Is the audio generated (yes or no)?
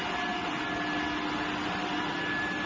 no